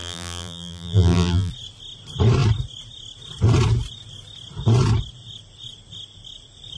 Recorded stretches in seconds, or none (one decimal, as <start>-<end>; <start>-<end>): 1.5-6.8